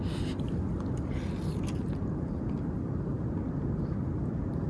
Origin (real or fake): real